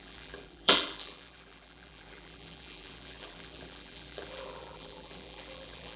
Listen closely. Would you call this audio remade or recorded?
remade